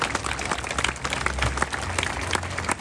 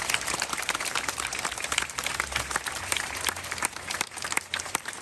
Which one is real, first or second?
first